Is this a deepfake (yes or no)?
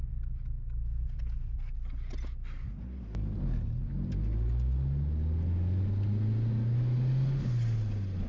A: no